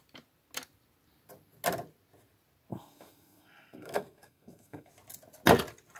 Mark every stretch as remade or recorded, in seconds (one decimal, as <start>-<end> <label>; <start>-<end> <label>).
0.0-2.7 recorded; 2.7-4.9 remade; 4.9-6.0 recorded